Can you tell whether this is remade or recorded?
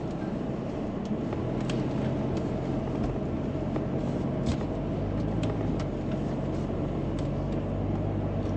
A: recorded